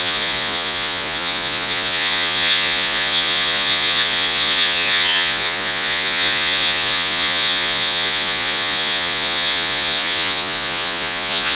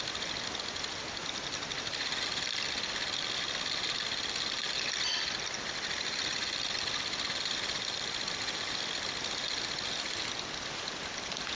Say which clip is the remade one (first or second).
first